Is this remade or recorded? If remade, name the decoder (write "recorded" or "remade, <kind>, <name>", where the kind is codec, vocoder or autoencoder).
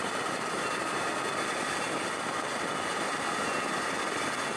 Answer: recorded